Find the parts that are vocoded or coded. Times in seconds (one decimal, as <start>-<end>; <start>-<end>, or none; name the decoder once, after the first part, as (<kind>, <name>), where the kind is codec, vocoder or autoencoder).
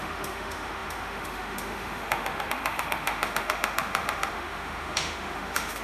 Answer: 0.0-5.8 (autoencoder, DAC-VAE)